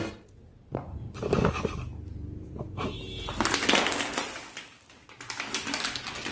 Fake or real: real